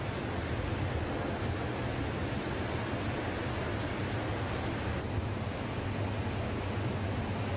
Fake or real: real